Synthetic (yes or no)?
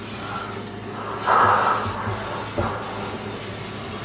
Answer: no